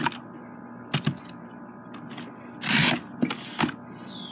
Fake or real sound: real